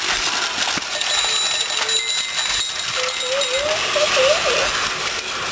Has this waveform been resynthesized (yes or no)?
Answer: no